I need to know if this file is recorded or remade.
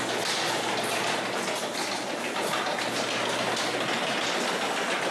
recorded